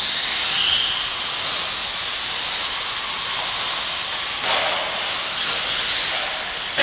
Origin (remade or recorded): recorded